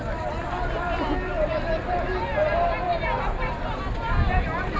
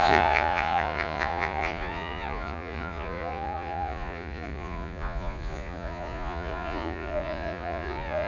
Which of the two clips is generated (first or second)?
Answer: second